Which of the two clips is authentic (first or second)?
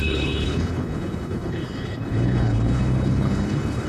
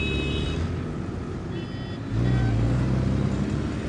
second